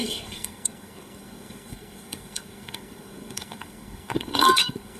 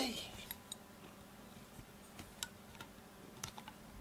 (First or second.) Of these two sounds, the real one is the second